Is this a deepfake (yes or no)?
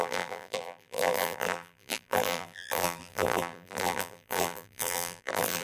yes